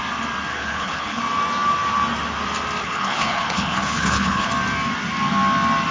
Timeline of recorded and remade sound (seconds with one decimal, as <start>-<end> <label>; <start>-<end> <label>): 0.0-0.5 recorded; 0.5-1.2 remade; 1.2-2.8 recorded; 2.8-4.5 remade; 4.5-5.9 recorded